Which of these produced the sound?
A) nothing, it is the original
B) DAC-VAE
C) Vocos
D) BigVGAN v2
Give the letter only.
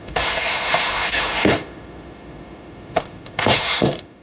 B